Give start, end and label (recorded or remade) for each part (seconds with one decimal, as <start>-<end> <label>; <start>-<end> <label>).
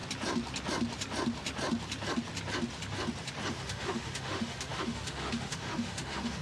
0.0-3.5 recorded; 3.5-6.4 remade